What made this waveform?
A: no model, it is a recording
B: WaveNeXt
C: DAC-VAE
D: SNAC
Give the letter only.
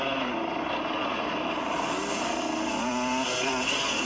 A